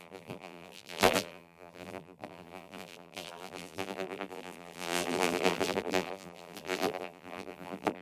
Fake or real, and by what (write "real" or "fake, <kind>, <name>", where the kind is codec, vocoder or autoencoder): fake, vocoder, BigVGAN v2